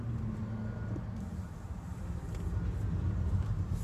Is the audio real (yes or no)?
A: yes